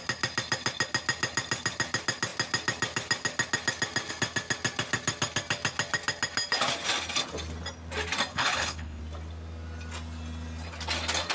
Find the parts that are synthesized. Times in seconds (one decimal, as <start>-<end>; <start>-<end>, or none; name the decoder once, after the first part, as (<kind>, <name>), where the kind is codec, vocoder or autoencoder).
8.3-9.0 (codec, HILCodec)